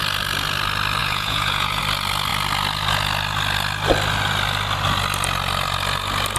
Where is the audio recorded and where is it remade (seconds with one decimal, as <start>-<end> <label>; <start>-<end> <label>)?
0.0-1.0 recorded; 1.0-1.8 remade; 1.8-6.4 recorded